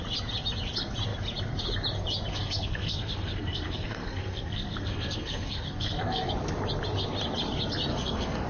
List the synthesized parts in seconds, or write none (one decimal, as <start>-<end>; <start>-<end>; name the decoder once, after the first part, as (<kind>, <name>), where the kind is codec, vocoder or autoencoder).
2.3-6.3 (codec, SNAC); 7.9-8.5